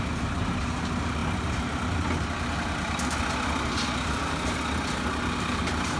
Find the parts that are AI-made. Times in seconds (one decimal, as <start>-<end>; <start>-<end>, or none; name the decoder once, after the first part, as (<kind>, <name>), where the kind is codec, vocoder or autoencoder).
none